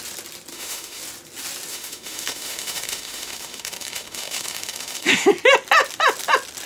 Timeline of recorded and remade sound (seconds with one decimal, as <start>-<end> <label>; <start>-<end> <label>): 0.0-0.5 recorded; 0.5-1.0 remade; 1.0-1.7 recorded; 1.7-5.3 remade; 5.3-6.7 recorded